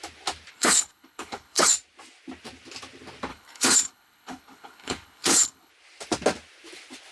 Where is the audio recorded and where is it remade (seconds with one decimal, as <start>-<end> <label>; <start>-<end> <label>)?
0.0-0.5 recorded; 0.5-1.7 remade; 1.7-3.3 recorded; 3.3-5.7 remade; 5.7-7.1 recorded